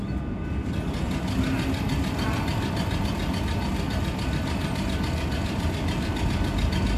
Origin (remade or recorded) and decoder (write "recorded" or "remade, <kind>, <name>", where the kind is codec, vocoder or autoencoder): recorded